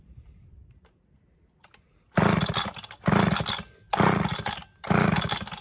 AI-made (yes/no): no